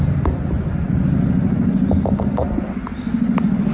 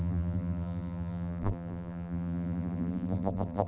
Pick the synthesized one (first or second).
second